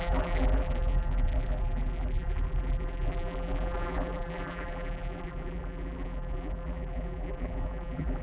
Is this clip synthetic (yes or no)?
yes